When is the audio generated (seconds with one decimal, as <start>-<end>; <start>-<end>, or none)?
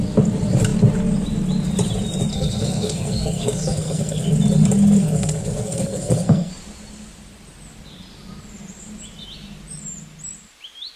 2.3-4.3; 5.0-6.5